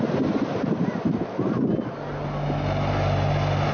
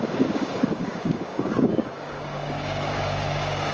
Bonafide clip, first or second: first